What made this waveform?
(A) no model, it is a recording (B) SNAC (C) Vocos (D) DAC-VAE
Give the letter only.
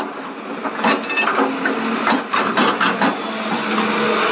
A